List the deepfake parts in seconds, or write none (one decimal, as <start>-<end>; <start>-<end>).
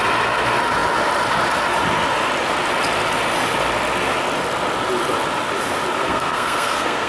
6.0-7.1